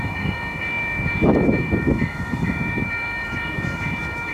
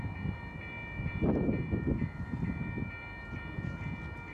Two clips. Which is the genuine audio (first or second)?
second